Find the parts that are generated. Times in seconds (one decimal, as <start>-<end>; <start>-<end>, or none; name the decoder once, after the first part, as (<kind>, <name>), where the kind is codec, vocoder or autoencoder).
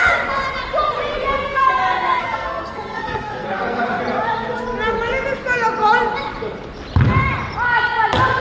1.4-4.0 (codec, SNAC)